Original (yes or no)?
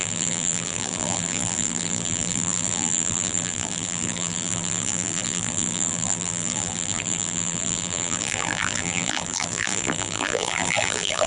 no